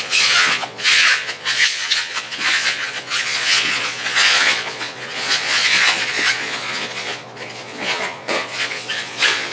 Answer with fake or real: fake